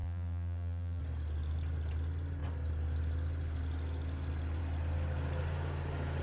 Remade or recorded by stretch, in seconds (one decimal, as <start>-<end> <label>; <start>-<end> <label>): 0.0-1.0 remade; 1.0-6.2 recorded